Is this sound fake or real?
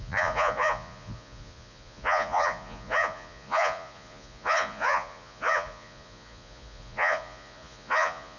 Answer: fake